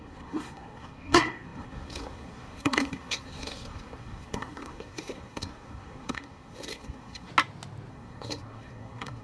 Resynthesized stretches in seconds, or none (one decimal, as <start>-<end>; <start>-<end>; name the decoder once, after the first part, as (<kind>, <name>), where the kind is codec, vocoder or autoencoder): 0.0-7.3 (codec, SNAC); 7.9-9.2